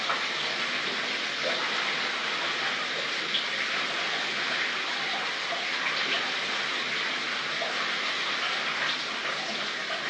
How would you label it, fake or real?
real